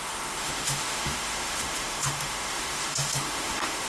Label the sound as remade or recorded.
remade